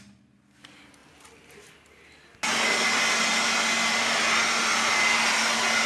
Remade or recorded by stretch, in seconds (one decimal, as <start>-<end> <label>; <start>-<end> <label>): 0.0-5.9 recorded